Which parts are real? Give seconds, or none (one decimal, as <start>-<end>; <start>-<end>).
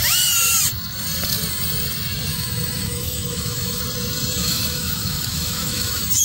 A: 0.0-2.3; 3.8-4.4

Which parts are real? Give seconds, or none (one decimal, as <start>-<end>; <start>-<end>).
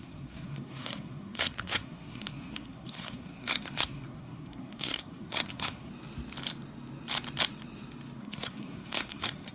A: 5.9-8.2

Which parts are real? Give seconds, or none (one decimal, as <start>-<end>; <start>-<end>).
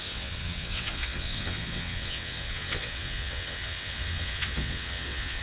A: none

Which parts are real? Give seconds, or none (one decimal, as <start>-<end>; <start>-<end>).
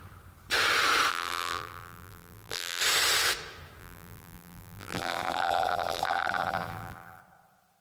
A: 0.0-1.1; 2.8-3.8; 7.2-7.8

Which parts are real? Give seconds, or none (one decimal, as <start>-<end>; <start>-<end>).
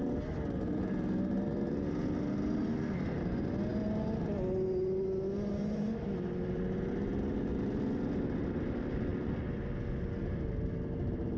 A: 0.0-11.4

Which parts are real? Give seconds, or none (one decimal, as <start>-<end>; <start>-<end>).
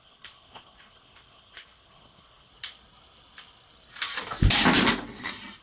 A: 2.5-5.6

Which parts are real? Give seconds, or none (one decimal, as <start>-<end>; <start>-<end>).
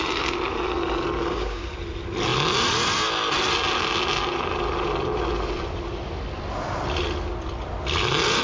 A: 0.0-1.2; 1.7-8.4